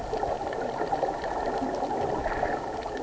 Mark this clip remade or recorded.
recorded